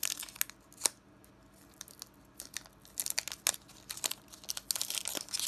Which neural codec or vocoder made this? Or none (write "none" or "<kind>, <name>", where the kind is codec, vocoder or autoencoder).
none